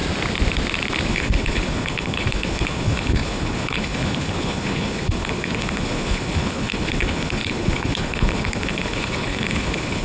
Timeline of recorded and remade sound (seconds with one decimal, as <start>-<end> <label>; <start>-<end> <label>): 0.0-1.1 recorded; 1.1-10.0 remade